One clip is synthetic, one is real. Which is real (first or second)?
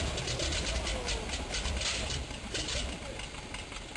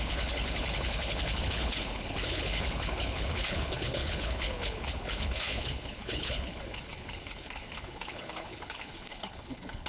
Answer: first